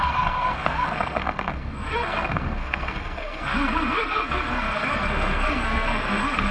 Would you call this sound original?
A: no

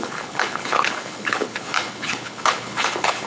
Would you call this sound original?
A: no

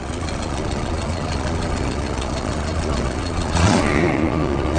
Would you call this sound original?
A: no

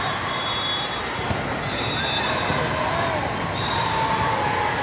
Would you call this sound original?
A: yes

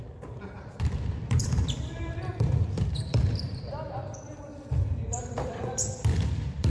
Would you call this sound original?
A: no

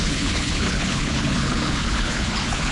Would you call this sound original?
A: no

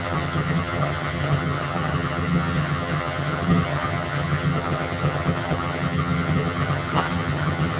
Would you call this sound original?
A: no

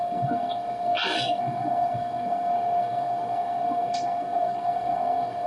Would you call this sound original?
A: no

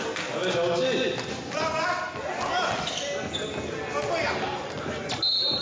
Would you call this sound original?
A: yes